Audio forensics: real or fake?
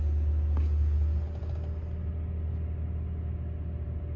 real